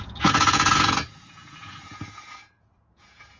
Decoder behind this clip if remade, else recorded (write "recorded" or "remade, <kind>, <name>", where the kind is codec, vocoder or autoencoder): remade, vocoder, Vocos